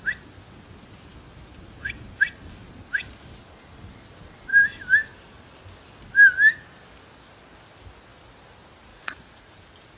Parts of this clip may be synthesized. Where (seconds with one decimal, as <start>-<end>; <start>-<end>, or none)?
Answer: 8.9-9.5